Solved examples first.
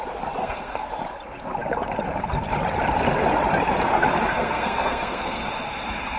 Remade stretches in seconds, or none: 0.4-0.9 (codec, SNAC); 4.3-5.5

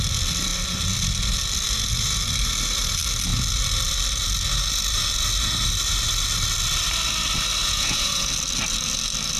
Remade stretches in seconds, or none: 7.6-8.3 (vocoder, Vocos)

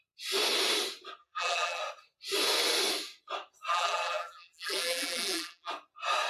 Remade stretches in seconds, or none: 1.2-1.8 (vocoder, BigVGAN v2); 3.7-5.7

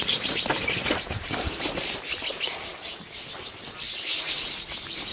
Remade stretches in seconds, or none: none

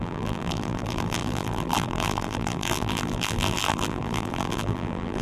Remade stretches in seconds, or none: 0.0-5.2 (vocoder, BigVGAN v2)

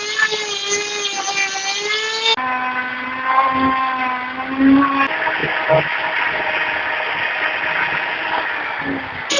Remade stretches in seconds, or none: none